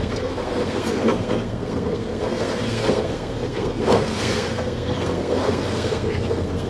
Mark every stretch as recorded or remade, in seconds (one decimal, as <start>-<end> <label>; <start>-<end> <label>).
0.0-6.7 remade